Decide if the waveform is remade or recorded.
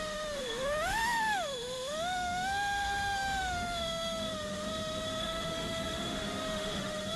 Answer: remade